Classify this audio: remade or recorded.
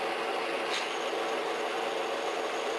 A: recorded